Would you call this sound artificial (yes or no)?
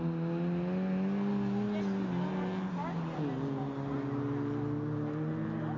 no